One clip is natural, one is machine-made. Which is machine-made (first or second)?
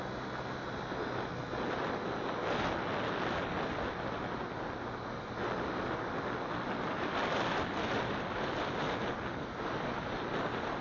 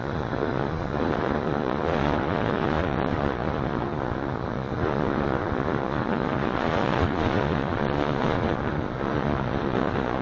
second